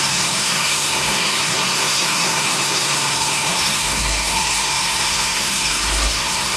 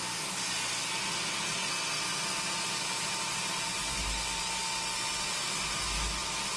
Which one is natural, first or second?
second